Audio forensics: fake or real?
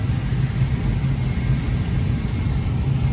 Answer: real